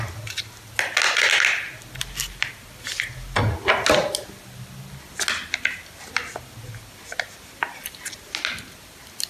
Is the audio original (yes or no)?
yes